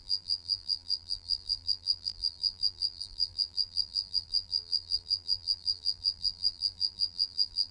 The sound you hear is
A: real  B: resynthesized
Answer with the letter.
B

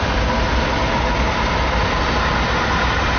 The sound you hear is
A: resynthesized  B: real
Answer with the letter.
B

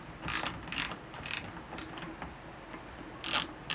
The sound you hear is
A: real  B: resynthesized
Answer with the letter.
A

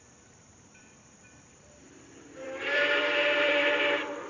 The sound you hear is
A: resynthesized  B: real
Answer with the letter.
A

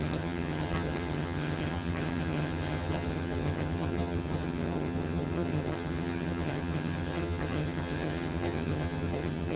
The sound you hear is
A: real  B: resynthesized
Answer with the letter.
B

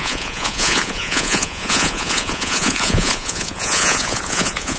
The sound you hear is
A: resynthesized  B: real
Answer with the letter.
A